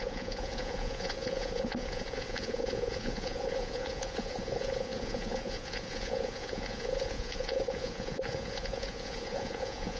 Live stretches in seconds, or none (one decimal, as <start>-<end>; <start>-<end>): none